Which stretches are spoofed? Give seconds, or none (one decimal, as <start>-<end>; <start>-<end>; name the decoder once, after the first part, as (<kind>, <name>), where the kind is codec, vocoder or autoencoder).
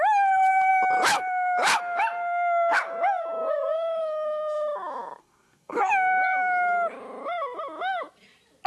5.2-5.9 (codec, SNAC)